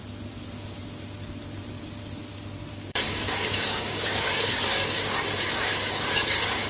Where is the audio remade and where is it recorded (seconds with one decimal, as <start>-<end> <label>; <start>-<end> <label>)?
0.0-2.7 recorded; 2.7-6.7 remade